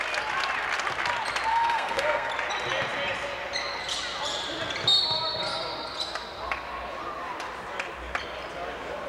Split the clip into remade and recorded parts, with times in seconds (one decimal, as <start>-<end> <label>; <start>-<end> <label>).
0.0-1.5 recorded; 1.5-2.3 remade; 2.3-9.1 recorded